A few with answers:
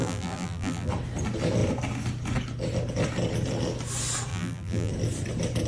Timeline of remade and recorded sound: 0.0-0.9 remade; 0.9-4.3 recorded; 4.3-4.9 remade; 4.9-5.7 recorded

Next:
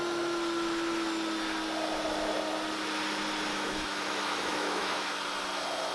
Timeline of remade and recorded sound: 0.0-3.5 recorded; 3.5-5.1 remade; 5.1-5.9 recorded